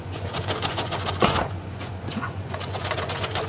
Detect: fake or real fake